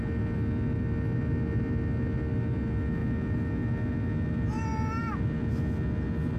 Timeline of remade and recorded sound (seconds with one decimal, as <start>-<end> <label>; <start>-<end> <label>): 0.0-6.4 recorded